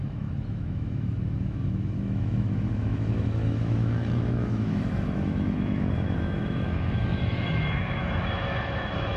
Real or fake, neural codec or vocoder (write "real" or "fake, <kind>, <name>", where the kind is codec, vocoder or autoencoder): fake, autoencoder, DAC-VAE